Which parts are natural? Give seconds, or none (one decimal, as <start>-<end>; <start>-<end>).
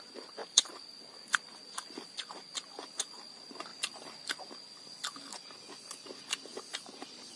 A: 0.0-0.4; 1.1-7.4